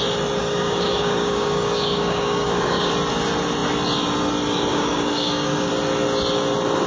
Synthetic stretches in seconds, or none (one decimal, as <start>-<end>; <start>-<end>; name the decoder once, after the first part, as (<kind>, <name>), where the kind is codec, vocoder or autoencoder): 0.4-2.9 (codec, DAC); 4.7-5.7